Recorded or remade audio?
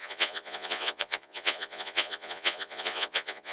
remade